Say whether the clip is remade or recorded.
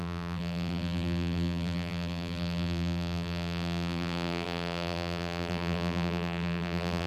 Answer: remade